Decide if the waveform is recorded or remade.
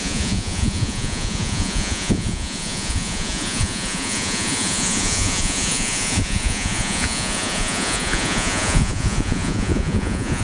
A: remade